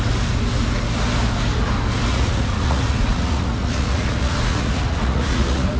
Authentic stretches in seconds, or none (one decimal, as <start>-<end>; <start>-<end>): 0.0-2.1

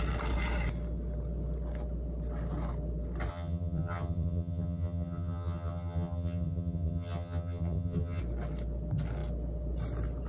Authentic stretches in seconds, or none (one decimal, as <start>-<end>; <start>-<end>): 0.0-3.3; 8.2-10.3

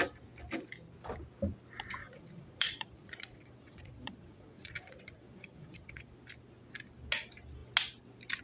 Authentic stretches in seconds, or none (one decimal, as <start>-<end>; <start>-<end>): 0.0-2.0; 6.0-8.4

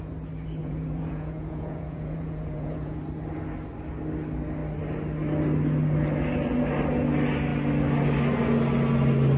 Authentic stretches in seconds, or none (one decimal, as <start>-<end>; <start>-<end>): 0.0-0.6; 3.0-9.4

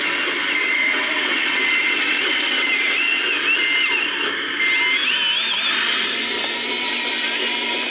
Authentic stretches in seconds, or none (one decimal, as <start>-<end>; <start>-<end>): 0.0-0.6; 3.2-7.9

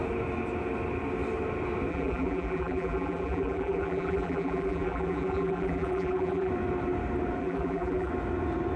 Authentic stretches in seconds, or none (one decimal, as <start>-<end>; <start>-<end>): 0.0-1.9; 6.5-7.4; 8.1-8.8

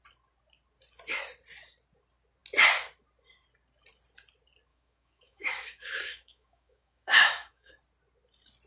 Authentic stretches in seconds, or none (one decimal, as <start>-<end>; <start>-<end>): 0.0-4.7; 7.7-8.7